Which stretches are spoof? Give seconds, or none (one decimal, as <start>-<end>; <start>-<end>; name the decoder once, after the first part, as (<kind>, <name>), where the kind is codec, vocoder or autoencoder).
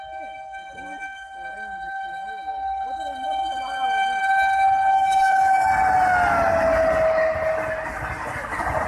4.9-5.7 (codec, DAC)